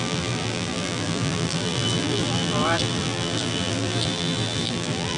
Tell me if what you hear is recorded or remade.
remade